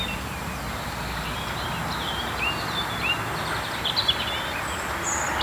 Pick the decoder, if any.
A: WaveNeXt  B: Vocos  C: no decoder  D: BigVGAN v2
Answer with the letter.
C